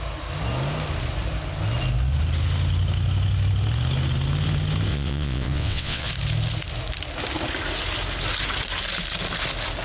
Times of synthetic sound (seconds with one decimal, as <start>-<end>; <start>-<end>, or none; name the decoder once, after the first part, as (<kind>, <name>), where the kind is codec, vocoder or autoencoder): 4.9-6.1 (vocoder, WaveNeXt)